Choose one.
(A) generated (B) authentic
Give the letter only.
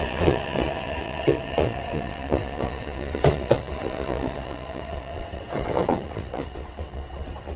A